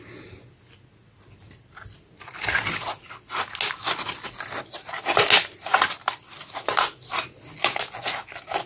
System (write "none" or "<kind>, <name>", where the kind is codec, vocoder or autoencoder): none